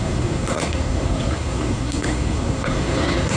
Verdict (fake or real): fake